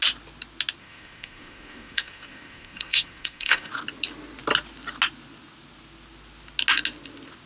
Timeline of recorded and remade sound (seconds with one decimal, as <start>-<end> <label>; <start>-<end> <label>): 0.0-0.8 recorded; 0.8-3.7 remade; 3.7-7.5 recorded